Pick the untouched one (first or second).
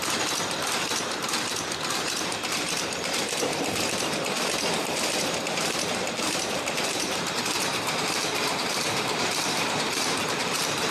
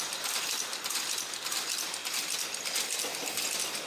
second